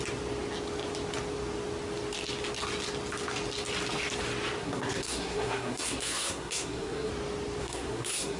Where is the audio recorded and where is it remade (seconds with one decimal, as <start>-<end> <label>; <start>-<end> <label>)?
0.0-4.6 recorded; 4.6-7.1 remade; 7.1-7.6 recorded; 7.6-8.4 remade